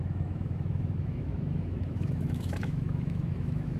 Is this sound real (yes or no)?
no